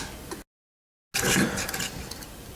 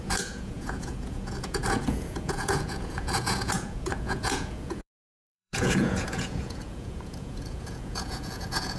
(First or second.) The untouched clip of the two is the first